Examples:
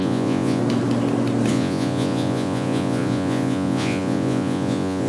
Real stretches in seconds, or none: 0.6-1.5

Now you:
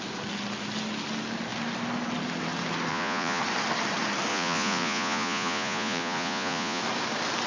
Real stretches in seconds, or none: 0.0-2.9; 3.4-4.3; 6.8-7.5

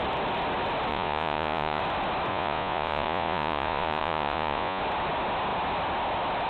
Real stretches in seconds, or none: 0.0-0.9; 1.8-2.3; 4.8-6.5

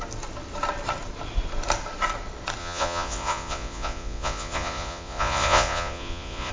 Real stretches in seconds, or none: 0.0-2.6

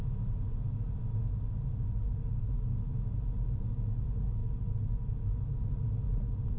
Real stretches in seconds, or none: 0.0-6.6

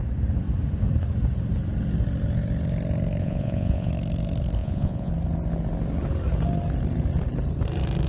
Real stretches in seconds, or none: 0.0-3.2; 3.9-4.6; 5.1-8.1

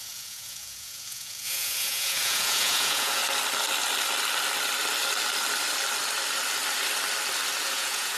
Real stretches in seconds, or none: 3.2-7.6

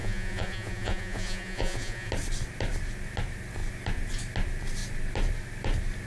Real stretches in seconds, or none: 2.1-6.1